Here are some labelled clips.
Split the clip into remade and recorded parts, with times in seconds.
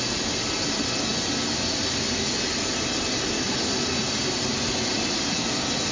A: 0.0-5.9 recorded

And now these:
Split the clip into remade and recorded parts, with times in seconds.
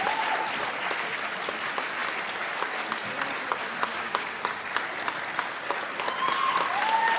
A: 0.0-3.9 recorded; 3.9-4.4 remade; 4.4-7.2 recorded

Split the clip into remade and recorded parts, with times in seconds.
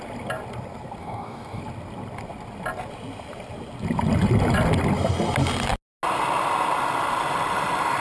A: 0.0-1.0 recorded; 1.0-1.6 remade; 1.6-8.0 recorded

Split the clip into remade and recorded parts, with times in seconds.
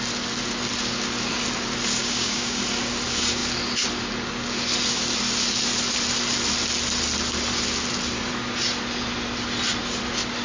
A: 0.0-2.0 recorded; 2.0-2.6 remade; 2.6-10.4 recorded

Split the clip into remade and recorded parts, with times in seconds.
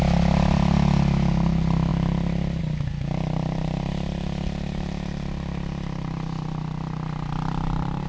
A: 0.0-8.1 recorded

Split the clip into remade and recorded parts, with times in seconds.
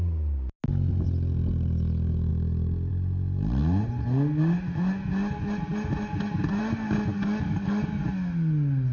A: 0.0-7.1 recorded; 7.1-7.8 remade; 7.8-8.9 recorded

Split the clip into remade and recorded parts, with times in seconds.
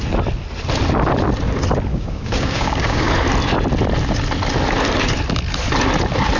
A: 0.0-1.9 recorded; 1.9-3.1 remade; 3.1-6.4 recorded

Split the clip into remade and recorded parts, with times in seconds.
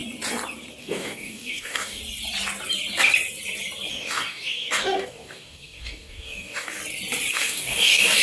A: 0.0-0.8 recorded; 0.8-2.0 remade; 2.0-3.9 recorded; 3.9-6.8 remade; 6.8-7.3 recorded; 7.3-8.2 remade